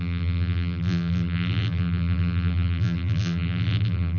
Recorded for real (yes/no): no